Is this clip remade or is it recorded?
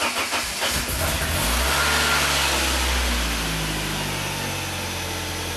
recorded